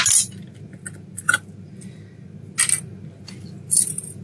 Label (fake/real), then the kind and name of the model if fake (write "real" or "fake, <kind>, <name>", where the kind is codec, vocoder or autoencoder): real